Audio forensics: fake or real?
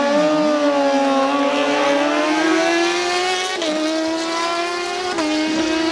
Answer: real